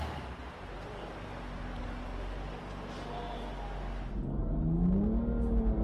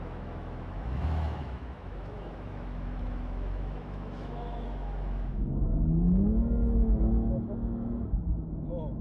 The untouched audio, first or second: first